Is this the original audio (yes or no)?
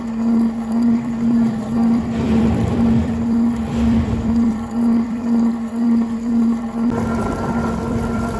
no